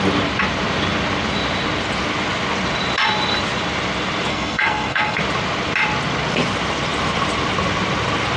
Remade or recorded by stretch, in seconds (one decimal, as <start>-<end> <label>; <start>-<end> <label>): 0.0-4.3 recorded; 4.3-5.2 remade; 5.2-8.4 recorded